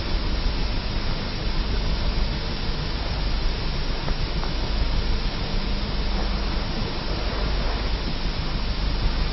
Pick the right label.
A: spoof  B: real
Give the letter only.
B